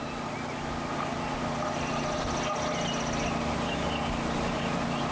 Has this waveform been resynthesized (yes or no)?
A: no